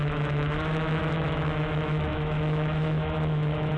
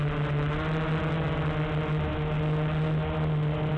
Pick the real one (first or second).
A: second